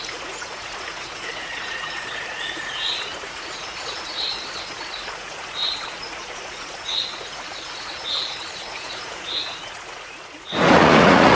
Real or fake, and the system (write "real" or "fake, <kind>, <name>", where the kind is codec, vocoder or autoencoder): fake, vocoder, Vocos